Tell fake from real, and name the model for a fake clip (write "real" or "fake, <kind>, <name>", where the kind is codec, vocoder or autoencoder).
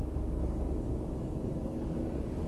fake, codec, DAC